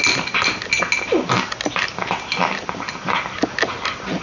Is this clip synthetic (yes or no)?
no